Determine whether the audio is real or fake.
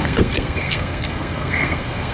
fake